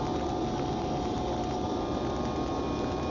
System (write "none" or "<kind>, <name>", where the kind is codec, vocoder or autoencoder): none